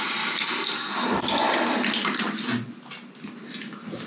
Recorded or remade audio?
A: recorded